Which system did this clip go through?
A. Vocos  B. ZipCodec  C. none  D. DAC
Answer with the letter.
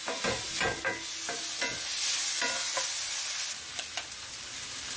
C